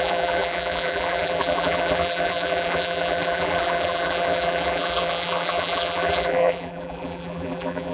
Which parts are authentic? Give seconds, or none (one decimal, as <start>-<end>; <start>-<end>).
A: none